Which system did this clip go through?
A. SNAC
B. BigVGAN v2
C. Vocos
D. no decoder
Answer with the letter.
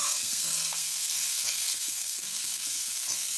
A